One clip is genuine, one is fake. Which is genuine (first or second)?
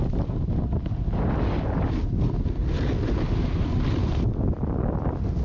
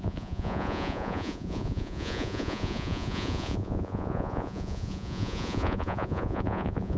first